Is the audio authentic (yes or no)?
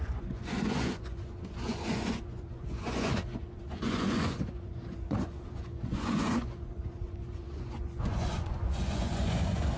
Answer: no